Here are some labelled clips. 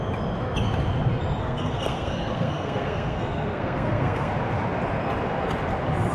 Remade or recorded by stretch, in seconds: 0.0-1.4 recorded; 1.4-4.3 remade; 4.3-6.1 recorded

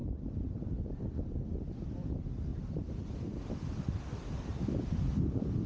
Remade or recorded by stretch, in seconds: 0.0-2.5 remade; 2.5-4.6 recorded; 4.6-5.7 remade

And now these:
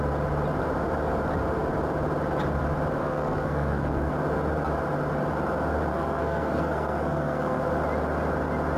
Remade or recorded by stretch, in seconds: 0.0-3.0 recorded; 3.0-4.1 remade; 4.1-5.9 recorded; 5.9-7.8 remade; 7.8-8.8 recorded

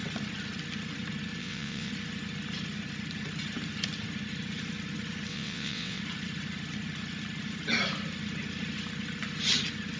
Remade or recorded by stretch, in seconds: 0.0-1.4 recorded; 1.4-1.9 remade; 1.9-5.3 recorded; 5.3-6.0 remade; 6.0-10.0 recorded

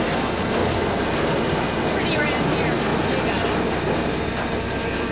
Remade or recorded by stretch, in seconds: 0.0-0.6 remade; 0.6-1.8 recorded; 1.8-2.9 remade; 2.9-4.6 recorded; 4.6-5.1 remade

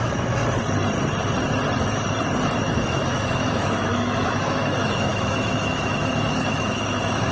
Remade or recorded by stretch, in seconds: 0.0-0.4 remade; 0.4-2.6 recorded; 2.6-7.3 remade

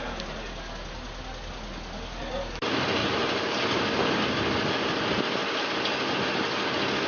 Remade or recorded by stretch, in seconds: 0.0-3.0 recorded; 3.0-3.6 remade; 3.6-7.1 recorded